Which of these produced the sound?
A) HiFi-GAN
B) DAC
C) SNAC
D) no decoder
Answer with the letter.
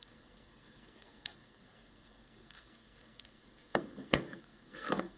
C